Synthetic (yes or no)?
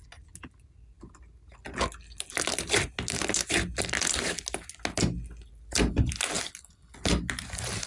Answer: no